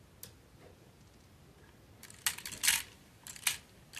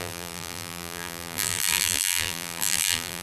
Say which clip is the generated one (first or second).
second